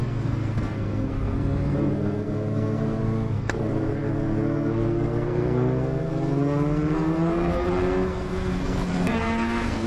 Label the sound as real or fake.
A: fake